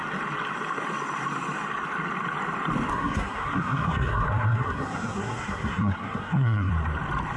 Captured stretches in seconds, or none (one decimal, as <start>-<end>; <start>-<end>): 0.0-2.9; 6.7-7.4